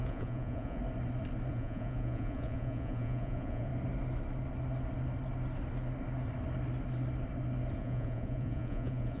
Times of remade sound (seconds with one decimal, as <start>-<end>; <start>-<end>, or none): 0.0-0.8; 1.5-3.7; 7.8-9.2